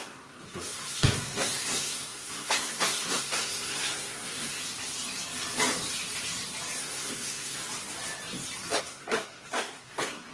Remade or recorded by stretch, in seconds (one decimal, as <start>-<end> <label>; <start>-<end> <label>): 0.0-4.6 remade; 4.6-6.8 recorded; 6.8-7.6 remade; 7.6-8.8 recorded; 8.8-10.3 remade